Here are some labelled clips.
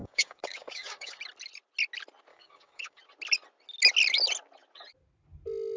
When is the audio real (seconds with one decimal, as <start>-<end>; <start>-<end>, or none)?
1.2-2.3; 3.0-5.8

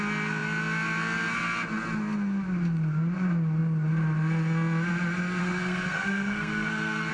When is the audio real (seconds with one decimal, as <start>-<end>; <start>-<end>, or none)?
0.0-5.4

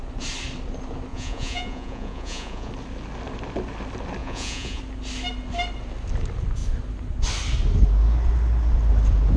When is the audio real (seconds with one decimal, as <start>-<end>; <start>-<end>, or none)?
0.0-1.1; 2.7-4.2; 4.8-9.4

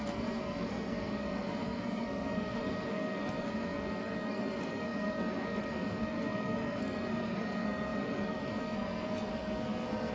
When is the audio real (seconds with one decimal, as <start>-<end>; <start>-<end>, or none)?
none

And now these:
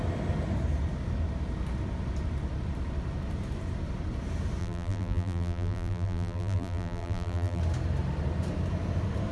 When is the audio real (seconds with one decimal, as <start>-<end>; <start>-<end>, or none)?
0.0-4.6; 7.6-9.3